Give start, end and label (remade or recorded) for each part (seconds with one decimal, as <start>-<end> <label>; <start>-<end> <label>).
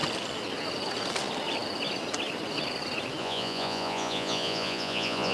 0.0-3.2 recorded; 3.2-5.3 remade